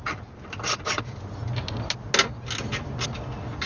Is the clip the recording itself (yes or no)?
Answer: yes